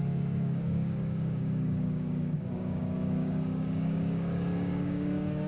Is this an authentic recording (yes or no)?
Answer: no